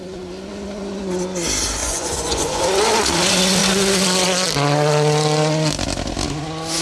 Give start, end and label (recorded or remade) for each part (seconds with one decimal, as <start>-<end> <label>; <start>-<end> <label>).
0.0-1.8 recorded; 1.8-2.6 remade; 2.6-6.8 recorded